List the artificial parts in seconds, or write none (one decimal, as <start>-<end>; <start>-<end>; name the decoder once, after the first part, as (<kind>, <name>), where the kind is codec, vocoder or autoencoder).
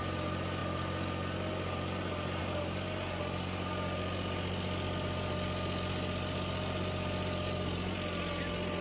none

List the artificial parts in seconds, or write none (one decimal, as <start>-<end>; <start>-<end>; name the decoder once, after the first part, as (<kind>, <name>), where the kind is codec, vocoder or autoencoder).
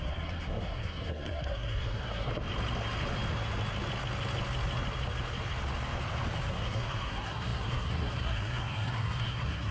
0.0-2.3 (codec, SNAC); 6.5-9.7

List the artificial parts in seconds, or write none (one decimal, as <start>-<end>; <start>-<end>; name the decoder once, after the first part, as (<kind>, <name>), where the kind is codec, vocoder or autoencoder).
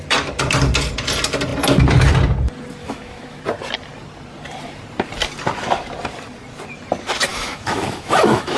2.8-3.4 (autoencoder, DAC-VAE); 7.3-8.6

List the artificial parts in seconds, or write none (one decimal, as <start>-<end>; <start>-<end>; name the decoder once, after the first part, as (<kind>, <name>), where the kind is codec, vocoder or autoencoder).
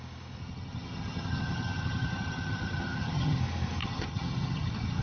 0.4-3.4 (vocoder, HiFi-GAN); 3.8-5.0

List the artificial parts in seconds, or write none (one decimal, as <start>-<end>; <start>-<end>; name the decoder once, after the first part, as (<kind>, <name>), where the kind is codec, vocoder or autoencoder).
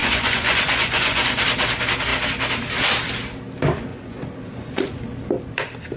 0.0-1.4 (vocoder, Vocos); 3.9-5.0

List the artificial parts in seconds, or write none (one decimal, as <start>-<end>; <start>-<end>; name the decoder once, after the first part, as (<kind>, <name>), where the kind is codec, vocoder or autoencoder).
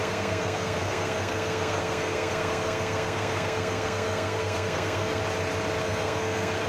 0.0-5.2 (codec, SNAC); 5.8-6.7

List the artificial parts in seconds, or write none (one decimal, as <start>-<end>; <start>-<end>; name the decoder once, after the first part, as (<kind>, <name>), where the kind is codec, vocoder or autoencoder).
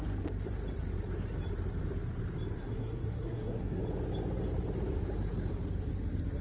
2.6-3.8 (codec, SNAC)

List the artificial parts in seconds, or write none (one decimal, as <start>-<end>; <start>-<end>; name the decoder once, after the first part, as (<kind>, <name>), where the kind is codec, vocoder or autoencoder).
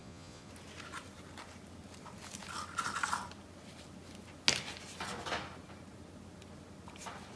0.0-0.5 (vocoder, Vocos)